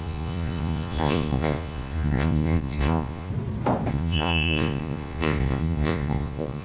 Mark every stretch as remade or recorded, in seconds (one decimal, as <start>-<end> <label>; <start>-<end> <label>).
0.0-3.3 remade; 3.3-3.9 recorded; 3.9-6.6 remade